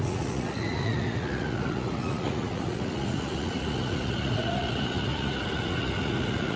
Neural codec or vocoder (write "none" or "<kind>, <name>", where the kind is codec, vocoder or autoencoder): vocoder, Vocos